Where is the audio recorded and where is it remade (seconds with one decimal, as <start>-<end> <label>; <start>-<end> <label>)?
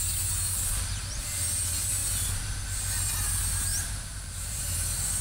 0.0-3.7 recorded; 3.7-4.6 remade; 4.6-5.2 recorded